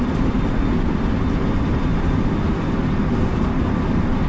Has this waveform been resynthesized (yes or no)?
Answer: no